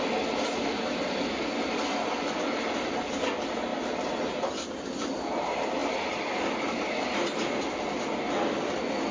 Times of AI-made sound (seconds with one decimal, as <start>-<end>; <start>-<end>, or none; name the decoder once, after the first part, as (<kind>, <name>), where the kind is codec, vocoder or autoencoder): none